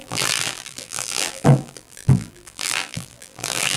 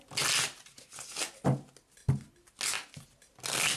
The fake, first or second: first